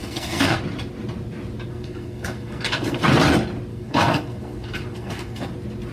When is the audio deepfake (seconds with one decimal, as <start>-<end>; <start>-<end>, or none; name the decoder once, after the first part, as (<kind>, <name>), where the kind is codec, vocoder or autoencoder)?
0.0-0.6 (codec, SNAC); 1.7-3.0; 3.7-5.5